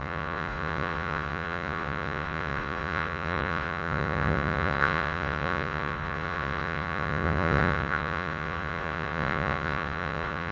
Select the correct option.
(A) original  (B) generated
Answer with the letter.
B